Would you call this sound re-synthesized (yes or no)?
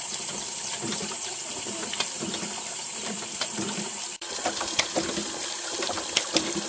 yes